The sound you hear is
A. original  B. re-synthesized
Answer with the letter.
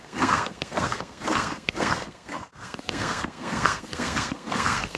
B